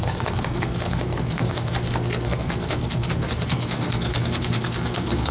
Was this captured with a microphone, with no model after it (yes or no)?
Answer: no